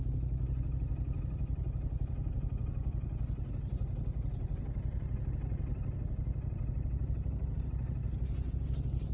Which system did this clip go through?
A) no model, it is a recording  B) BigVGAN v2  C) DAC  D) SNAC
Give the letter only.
A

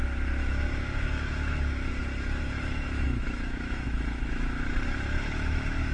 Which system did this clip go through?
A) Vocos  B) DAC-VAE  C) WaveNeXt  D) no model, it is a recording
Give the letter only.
B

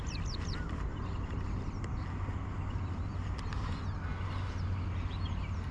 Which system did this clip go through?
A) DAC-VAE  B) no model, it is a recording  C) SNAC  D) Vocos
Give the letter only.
B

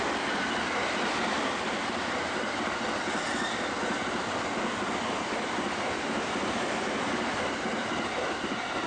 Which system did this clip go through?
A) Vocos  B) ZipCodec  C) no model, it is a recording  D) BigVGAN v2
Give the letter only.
C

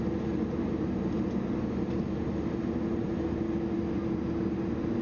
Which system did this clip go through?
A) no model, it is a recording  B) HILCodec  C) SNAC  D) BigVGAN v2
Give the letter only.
A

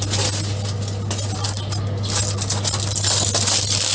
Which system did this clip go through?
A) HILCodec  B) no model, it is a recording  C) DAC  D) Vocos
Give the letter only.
B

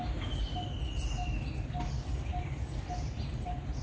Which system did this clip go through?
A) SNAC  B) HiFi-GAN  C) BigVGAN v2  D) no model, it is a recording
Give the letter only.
D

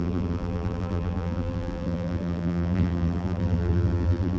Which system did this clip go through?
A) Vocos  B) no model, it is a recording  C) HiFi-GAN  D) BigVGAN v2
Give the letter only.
D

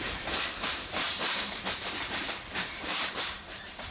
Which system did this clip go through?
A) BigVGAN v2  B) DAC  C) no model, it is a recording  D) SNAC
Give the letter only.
A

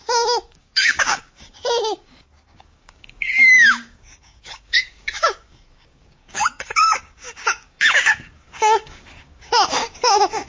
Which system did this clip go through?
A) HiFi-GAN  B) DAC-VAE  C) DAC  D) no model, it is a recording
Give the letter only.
C